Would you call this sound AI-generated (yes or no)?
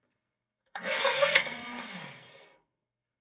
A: yes